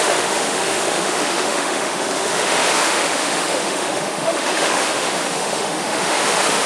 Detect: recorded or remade remade